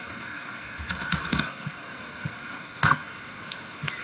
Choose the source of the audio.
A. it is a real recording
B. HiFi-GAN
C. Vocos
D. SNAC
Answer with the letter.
D